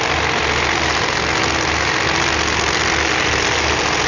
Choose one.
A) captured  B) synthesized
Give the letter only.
A